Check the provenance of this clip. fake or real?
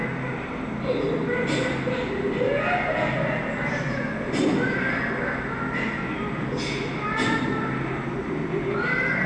real